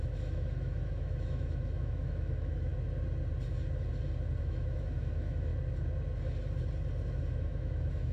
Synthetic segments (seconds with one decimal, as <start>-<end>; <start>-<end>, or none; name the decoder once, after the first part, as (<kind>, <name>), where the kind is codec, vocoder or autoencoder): 0.0-2.7 (autoencoder, DAC-VAE); 4.4-5.5; 7.3-8.1